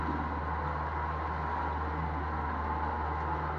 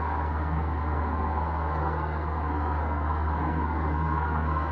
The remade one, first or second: second